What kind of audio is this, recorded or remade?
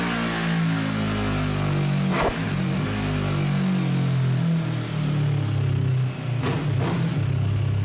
recorded